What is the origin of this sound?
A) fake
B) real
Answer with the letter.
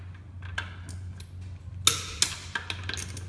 B